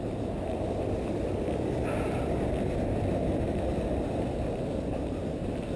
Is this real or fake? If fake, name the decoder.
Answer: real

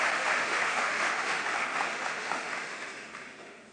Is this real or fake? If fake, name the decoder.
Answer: fake, autoencoder, DAC-VAE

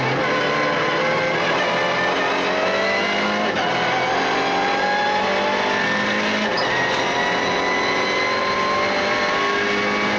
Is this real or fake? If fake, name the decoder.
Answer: real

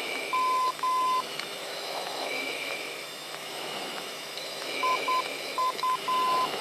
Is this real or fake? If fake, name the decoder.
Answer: fake, autoencoder, DAC-VAE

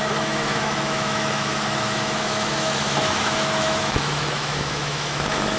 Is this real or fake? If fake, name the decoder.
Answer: fake, autoencoder, DAC-VAE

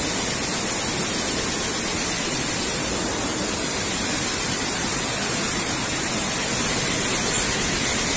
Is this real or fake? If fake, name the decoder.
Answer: real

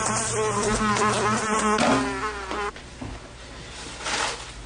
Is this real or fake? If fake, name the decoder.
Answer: real